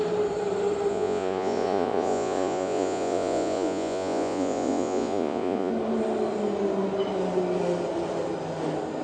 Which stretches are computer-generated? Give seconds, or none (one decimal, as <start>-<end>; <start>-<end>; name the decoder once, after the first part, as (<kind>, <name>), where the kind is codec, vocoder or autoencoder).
0.9-5.7 (vocoder, Vocos)